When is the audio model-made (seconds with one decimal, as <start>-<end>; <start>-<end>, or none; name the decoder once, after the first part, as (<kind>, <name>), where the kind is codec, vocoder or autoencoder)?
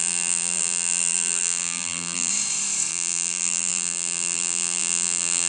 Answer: 0.0-2.3 (vocoder, BigVGAN v2); 2.9-5.5